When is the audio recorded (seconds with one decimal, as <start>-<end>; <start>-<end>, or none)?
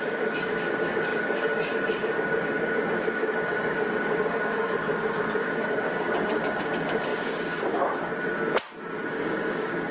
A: 8.1-9.1